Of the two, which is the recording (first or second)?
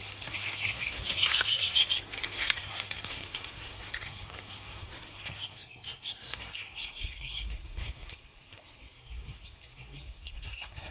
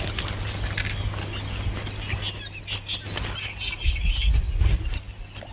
second